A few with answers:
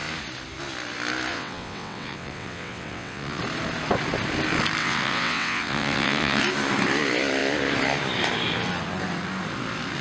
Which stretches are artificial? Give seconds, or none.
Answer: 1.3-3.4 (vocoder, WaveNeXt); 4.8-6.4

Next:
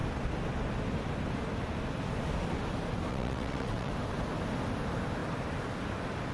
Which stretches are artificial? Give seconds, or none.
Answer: 3.1-3.9 (vocoder, WaveNeXt)

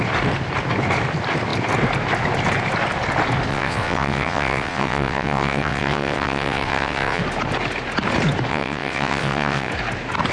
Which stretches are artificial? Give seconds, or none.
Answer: 3.5-7.2 (vocoder, WaveNeXt); 8.5-9.7